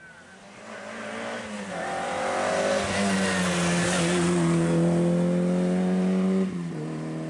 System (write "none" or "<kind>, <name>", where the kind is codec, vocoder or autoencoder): none